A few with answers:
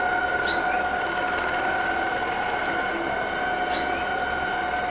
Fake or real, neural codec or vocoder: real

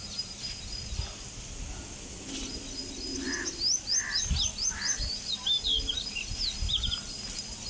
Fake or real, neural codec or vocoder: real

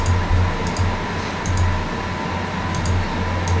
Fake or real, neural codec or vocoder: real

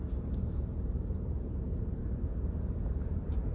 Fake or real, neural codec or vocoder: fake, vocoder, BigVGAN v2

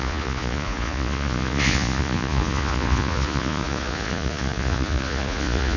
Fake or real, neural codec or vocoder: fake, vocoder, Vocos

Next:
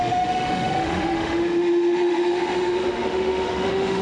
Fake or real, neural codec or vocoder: fake, autoencoder, DAC-VAE